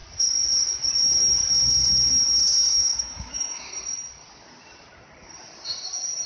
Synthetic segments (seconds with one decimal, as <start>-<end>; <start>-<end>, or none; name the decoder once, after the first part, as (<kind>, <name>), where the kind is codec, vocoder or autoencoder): 2.7-3.7 (autoencoder, DAC-VAE)